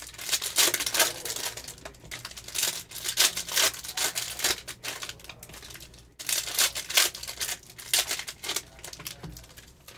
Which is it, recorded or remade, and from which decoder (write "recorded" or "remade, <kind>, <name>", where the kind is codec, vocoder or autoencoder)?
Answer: recorded